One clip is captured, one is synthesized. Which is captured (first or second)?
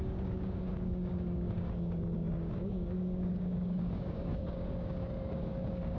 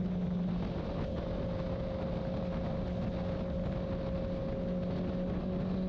second